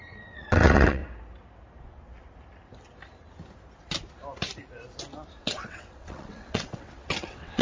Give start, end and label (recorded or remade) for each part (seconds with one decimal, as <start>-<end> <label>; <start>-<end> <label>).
0.0-1.0 remade; 1.0-5.4 recorded; 5.4-7.6 remade